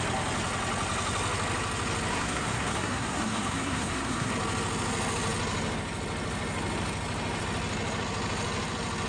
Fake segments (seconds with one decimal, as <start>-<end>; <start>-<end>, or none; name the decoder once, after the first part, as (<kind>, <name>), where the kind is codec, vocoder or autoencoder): 2.1-4.3 (codec, SNAC)